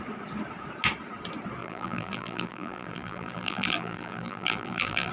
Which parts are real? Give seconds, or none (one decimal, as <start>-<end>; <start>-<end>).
0.0-1.6